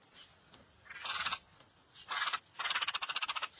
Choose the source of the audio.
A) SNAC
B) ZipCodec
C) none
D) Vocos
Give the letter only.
C